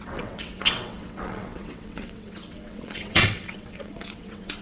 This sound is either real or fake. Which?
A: fake